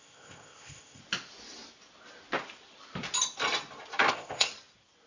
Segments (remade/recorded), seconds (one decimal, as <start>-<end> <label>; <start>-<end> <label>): 0.0-1.0 remade; 1.0-4.1 recorded; 4.1-4.5 remade; 4.5-5.1 recorded